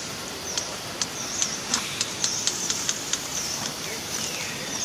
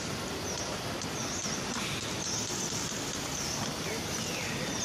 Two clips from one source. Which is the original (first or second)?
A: second